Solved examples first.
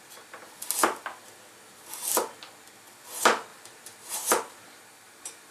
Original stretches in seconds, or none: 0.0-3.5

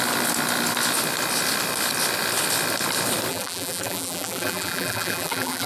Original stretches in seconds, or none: 0.0-3.3

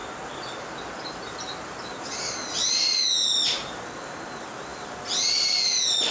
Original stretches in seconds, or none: 0.0-6.1

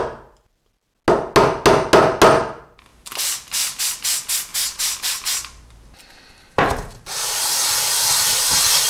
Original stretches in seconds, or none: 0.0-4.5